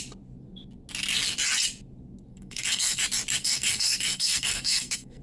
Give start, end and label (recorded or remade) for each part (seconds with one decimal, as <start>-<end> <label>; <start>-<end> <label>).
0.0-2.3 recorded; 2.3-3.0 remade; 3.0-3.4 recorded; 3.4-5.2 remade